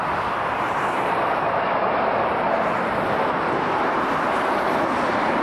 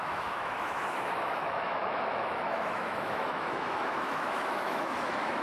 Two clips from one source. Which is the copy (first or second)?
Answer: second